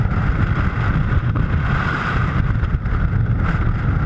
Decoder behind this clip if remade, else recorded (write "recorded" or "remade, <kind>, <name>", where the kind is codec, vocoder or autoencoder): recorded